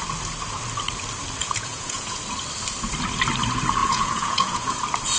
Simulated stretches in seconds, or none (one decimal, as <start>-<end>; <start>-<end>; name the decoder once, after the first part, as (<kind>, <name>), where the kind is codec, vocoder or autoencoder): 1.4-2.2 (vocoder, Vocos); 3.8-4.8